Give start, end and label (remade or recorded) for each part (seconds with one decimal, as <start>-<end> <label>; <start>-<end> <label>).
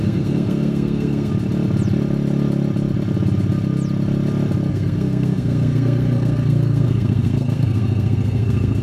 0.0-1.3 remade; 1.3-4.7 recorded; 4.7-8.8 remade